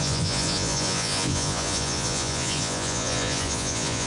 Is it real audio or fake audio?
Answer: fake